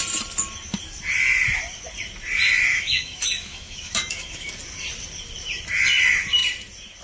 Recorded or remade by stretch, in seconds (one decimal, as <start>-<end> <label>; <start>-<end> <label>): 0.0-2.7 recorded; 2.7-4.5 remade; 4.5-7.0 recorded